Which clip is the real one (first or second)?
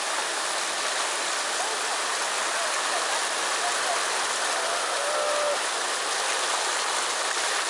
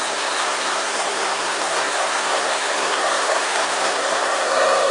first